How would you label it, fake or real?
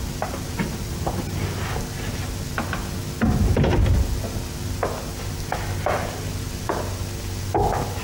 real